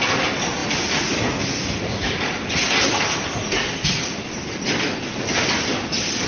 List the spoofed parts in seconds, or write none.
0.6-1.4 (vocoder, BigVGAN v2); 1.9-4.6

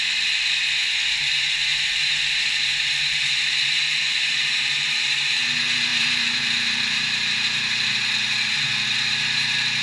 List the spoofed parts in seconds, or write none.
1.7-5.3 (vocoder, BigVGAN v2); 5.9-8.0